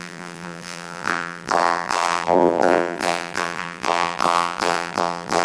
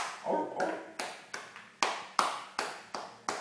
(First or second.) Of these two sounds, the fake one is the first